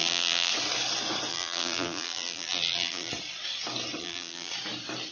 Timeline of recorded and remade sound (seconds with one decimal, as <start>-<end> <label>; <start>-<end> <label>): 0.0-0.5 remade; 0.5-1.3 recorded; 1.3-3.1 remade; 3.1-4.0 recorded; 4.0-4.5 remade; 4.5-5.1 recorded